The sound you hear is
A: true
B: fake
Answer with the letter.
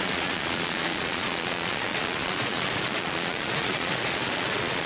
B